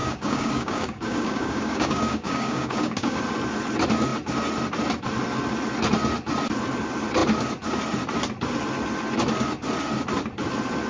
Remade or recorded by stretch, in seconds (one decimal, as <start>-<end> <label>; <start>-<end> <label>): 0.0-3.2 remade; 3.2-10.9 recorded